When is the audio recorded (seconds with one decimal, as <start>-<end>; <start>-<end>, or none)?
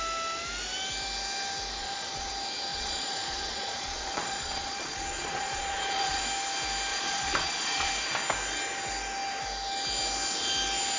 0.0-1.8; 2.3-2.7; 6.2-6.9; 7.9-11.0